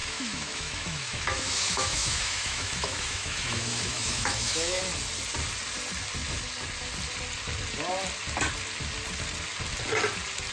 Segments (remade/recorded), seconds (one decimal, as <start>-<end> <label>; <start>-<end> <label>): 0.0-4.8 remade; 4.8-10.5 recorded